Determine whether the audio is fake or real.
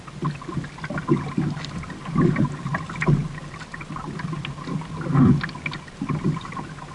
real